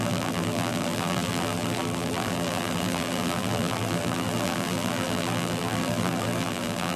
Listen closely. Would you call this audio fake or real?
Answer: fake